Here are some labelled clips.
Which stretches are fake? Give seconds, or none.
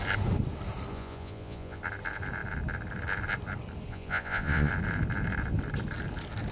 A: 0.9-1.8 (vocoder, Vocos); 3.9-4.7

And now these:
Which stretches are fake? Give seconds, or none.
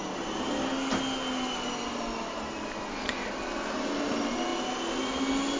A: none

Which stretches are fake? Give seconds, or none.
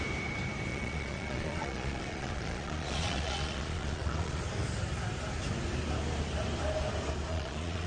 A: 0.7-4.4 (vocoder, Vocos); 7.3-7.9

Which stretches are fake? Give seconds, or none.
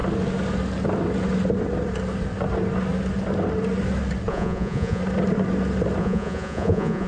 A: 4.3-5.0 (vocoder, Vocos); 6.0-7.1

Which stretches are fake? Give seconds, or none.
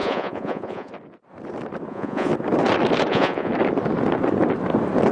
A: 0.0-0.9 (vocoder, Vocos); 1.9-2.3; 3.1-3.5